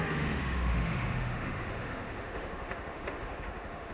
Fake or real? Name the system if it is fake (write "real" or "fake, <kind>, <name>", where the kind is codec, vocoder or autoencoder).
fake, autoencoder, DAC-VAE